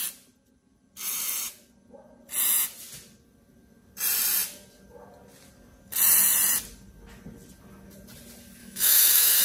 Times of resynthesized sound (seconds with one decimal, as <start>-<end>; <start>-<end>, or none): 8.6-9.4